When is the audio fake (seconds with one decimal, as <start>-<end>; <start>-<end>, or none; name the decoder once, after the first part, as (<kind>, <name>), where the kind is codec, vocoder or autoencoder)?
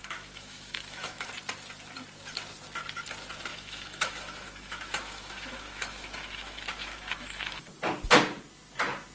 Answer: 0.0-1.3 (autoencoder, DAC-VAE); 3.5-7.7